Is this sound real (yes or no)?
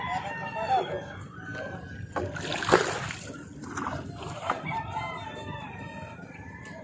yes